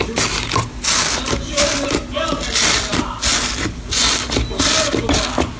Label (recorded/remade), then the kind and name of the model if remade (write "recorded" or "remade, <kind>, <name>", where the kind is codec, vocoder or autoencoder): recorded